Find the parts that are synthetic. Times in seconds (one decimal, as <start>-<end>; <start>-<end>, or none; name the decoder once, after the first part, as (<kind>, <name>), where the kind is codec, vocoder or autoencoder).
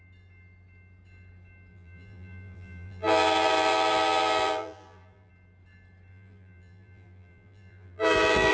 1.7-5.3 (vocoder, BigVGAN v2); 6.1-8.5